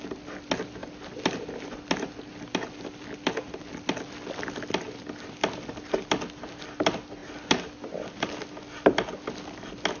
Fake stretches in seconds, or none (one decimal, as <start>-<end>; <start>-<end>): none